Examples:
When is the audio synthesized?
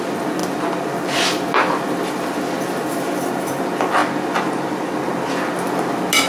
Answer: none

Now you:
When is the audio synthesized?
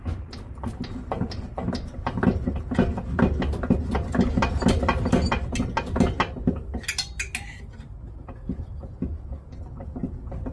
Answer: 10.0-10.5 (vocoder, BigVGAN v2)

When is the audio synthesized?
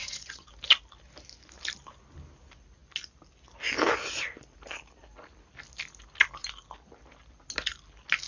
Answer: 0.0-0.5 (vocoder, Vocos)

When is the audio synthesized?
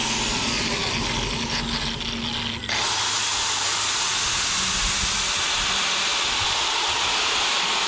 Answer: none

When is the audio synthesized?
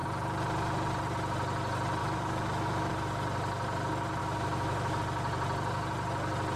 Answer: 2.0-2.9 (autoencoder, DAC-VAE); 4.2-5.0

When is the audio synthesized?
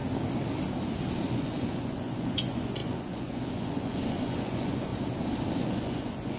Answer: 1.3-4.9 (vocoder, Vocos); 5.5-6.4